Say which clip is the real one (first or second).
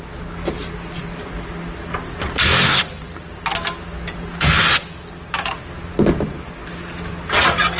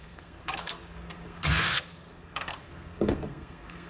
first